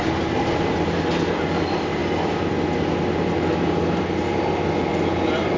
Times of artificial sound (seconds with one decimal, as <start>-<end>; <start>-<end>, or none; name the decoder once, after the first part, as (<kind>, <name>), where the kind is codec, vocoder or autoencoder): none